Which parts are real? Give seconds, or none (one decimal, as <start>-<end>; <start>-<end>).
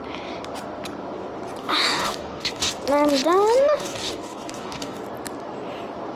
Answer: 0.0-1.6; 2.7-3.6; 5.0-6.2